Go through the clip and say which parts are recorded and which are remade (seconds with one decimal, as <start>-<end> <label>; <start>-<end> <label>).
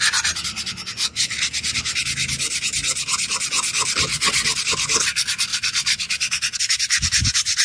0.0-4.1 recorded; 4.1-4.6 remade; 4.6-5.5 recorded; 5.5-6.6 remade; 6.6-7.6 recorded